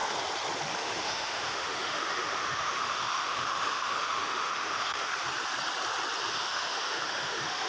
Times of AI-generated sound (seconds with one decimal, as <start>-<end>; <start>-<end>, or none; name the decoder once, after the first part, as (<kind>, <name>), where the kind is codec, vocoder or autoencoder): 0.8-5.1 (autoencoder, DAC-VAE); 6.3-7.7